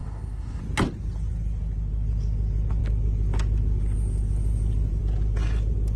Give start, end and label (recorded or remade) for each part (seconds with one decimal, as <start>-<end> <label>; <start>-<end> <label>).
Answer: 0.0-0.6 remade; 0.6-6.0 recorded